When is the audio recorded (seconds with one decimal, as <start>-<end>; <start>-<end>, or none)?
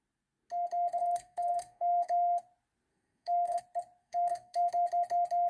0.0-1.0; 2.4-2.9; 3.6-4.0; 4.7-5.5